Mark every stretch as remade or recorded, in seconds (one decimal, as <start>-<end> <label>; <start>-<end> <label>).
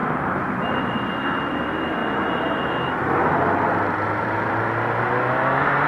0.0-0.6 remade; 0.6-2.0 recorded; 2.0-2.5 remade; 2.5-3.4 recorded; 3.4-4.5 remade; 4.5-5.9 recorded